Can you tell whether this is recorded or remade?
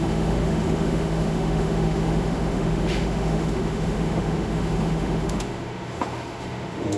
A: remade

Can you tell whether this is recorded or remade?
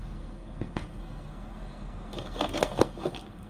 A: remade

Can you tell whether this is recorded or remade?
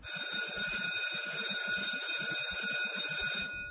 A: recorded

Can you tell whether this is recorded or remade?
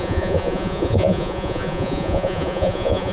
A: remade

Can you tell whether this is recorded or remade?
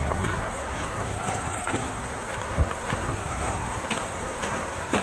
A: remade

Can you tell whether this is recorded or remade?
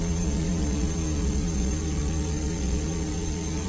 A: remade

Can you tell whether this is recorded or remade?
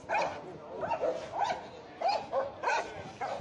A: recorded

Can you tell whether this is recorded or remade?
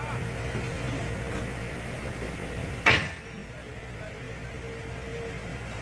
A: recorded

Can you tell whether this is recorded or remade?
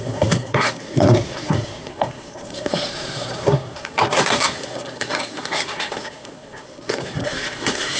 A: remade